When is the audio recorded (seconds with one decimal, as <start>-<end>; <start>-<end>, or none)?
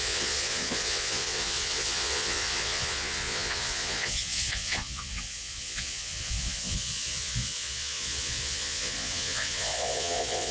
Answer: none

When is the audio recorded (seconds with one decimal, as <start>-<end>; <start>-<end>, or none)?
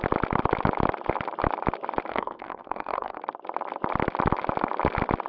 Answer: 0.0-2.1; 3.2-5.3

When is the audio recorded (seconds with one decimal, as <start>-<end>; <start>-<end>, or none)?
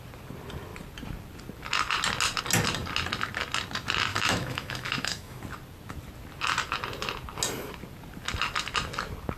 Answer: 0.0-4.1; 5.4-9.4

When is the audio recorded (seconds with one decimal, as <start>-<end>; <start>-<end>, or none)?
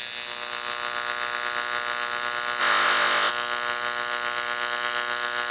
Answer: 0.0-2.6; 3.3-5.5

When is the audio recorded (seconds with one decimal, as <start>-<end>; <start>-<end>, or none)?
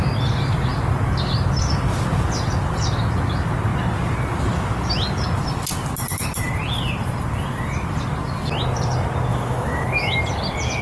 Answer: 0.0-9.3; 10.2-10.8